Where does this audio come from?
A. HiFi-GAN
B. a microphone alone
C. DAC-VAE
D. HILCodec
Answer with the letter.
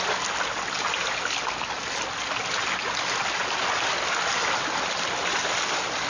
B